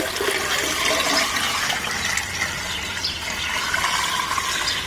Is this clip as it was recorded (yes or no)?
yes